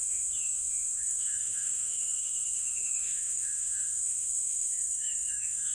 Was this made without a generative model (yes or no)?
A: no